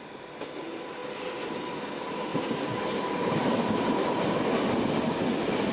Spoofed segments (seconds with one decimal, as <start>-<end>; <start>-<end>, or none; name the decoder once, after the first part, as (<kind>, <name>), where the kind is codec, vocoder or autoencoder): 2.3-4.2 (vocoder, BigVGAN v2)